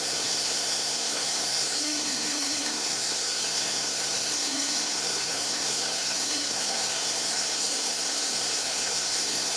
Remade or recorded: remade